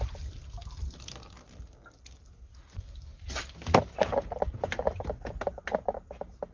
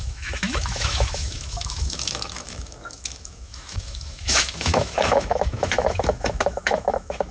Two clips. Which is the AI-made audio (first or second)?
second